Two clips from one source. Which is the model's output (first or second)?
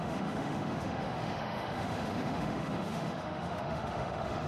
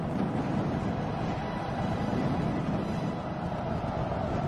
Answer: first